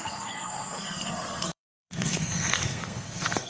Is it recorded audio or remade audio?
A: remade